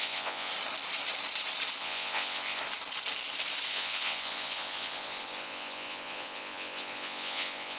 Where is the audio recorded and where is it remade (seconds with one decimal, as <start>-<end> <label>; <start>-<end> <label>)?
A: 0.0-0.5 remade; 0.5-1.8 recorded; 1.8-2.6 remade; 2.6-3.7 recorded; 3.7-7.8 remade